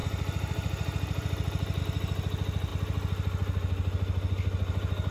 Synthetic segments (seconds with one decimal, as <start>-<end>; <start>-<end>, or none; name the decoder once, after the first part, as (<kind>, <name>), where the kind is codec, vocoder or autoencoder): 0.0-1.8 (vocoder, BigVGAN v2)